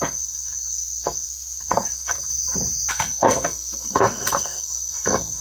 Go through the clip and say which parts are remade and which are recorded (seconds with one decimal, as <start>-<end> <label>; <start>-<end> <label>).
0.0-2.3 remade; 2.3-2.9 recorded; 2.9-5.4 remade